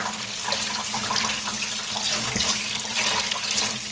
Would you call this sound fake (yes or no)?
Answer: no